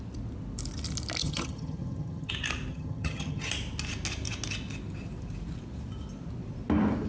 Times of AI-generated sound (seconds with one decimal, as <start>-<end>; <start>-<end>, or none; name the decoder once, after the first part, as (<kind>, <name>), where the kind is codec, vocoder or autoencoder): 1.2-2.3 (vocoder, HiFi-GAN); 2.7-3.5